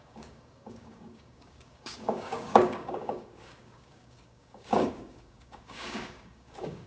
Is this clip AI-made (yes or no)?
yes